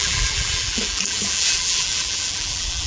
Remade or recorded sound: remade